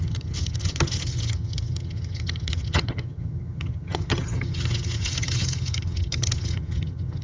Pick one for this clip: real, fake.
fake